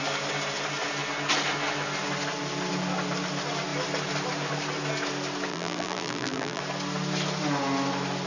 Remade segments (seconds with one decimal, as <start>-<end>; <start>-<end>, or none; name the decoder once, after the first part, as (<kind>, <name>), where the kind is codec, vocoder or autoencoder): 5.5-6.6 (vocoder, BigVGAN v2)